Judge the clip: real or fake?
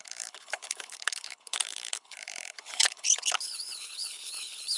fake